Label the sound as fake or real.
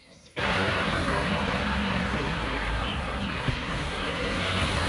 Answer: fake